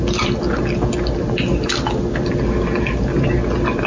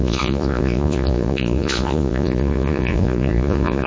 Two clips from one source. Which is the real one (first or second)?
first